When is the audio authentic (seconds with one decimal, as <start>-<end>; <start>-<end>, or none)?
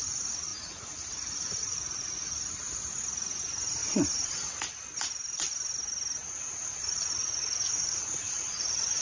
0.0-0.5; 2.3-3.8; 4.3-6.2